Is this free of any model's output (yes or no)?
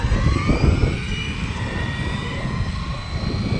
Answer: yes